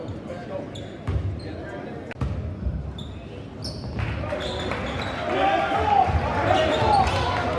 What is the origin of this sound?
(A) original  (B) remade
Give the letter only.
A